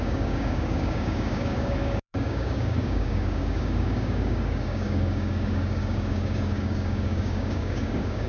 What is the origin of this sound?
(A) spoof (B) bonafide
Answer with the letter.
A